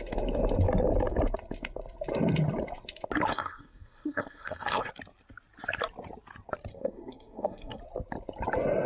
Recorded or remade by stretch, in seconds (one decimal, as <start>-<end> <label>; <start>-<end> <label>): 0.0-3.3 recorded; 3.3-4.9 remade; 4.9-6.7 recorded; 6.7-7.8 remade; 7.8-8.9 recorded